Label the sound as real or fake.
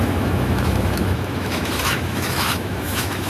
fake